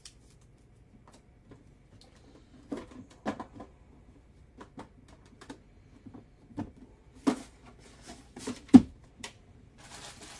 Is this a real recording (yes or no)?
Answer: yes